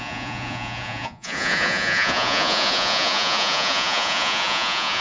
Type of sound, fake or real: fake